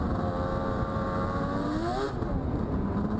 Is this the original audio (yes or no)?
no